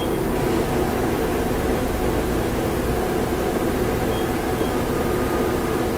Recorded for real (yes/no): yes